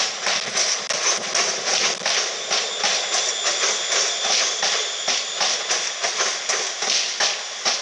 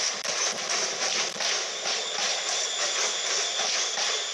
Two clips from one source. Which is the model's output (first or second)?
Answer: second